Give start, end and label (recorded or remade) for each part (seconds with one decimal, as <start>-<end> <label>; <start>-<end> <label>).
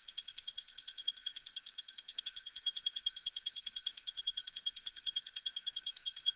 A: 0.0-6.4 remade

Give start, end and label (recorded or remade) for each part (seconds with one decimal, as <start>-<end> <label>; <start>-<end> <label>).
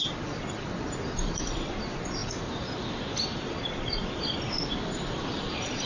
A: 0.0-5.9 recorded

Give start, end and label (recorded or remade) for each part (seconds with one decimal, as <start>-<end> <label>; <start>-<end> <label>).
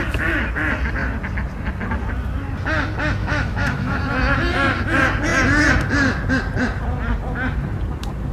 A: 0.0-3.2 recorded; 3.2-4.0 remade; 4.0-8.3 recorded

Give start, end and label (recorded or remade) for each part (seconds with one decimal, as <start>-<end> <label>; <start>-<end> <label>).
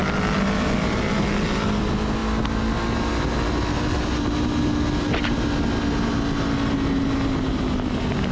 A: 0.0-8.3 recorded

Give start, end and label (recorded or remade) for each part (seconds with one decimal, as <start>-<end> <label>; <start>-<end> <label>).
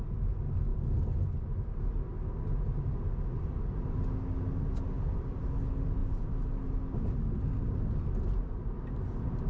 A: 0.0-9.5 recorded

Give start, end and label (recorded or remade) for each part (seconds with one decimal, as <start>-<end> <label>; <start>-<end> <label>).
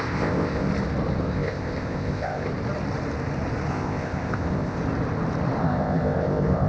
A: 0.0-0.7 remade; 0.7-1.2 recorded; 1.2-2.5 remade; 2.5-3.7 recorded; 3.7-4.8 remade; 4.8-5.6 recorded; 5.6-6.7 remade